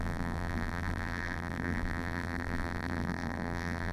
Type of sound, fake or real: fake